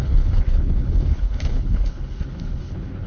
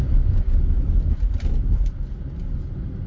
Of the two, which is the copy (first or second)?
first